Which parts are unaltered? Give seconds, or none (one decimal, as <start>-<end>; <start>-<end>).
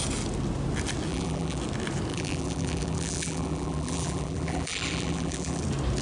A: 0.0-1.1; 1.6-2.1; 5.6-6.0